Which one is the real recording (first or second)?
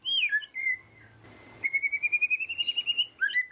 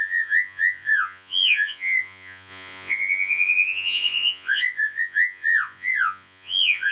first